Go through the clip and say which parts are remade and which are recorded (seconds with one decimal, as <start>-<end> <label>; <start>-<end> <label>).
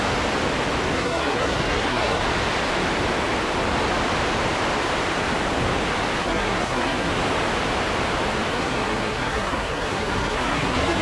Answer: 0.0-0.9 recorded; 0.9-2.2 remade; 2.2-6.2 recorded; 6.2-7.1 remade; 7.1-8.5 recorded; 8.5-11.0 remade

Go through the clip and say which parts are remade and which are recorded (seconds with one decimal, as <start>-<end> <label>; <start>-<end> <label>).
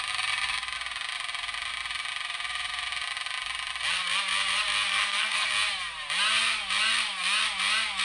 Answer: 0.0-4.9 recorded; 4.9-5.5 remade; 5.5-8.0 recorded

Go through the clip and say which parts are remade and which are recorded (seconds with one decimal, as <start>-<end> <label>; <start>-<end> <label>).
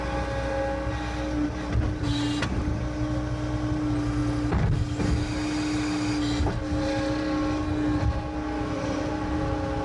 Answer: 0.0-9.8 recorded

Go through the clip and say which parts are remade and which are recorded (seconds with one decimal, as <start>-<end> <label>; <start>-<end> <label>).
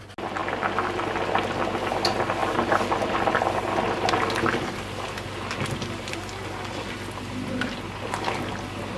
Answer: 0.0-9.0 recorded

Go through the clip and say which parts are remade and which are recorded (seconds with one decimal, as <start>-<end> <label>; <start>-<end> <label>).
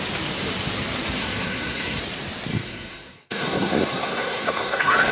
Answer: 0.0-1.2 recorded; 1.2-2.0 remade; 2.0-2.5 recorded; 2.5-5.1 remade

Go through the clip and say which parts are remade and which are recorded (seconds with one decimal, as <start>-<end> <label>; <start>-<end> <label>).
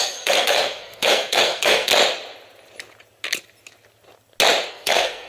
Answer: 0.0-1.9 remade; 1.9-4.7 recorded; 4.7-5.3 remade